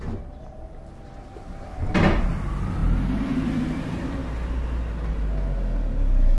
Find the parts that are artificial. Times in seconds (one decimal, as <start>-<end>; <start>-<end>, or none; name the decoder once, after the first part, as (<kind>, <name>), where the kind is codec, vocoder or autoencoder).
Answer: none